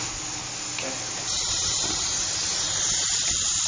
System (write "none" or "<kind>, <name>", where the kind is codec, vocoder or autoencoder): none